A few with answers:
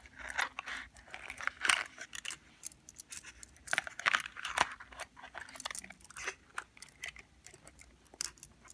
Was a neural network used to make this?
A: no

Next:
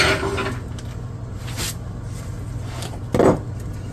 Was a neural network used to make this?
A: no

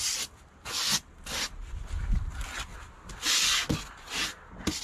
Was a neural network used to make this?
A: no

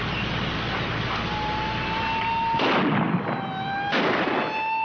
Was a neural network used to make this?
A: no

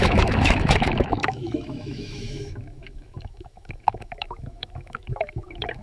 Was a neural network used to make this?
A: yes